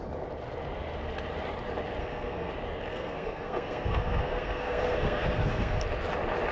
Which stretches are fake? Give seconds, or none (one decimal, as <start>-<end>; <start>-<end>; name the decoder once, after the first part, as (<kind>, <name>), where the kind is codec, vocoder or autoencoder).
2.0-2.5 (codec, SNAC); 2.9-5.8